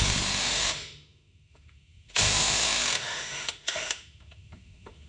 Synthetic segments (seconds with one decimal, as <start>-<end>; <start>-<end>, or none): 0.0-5.1